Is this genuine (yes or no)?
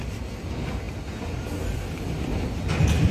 yes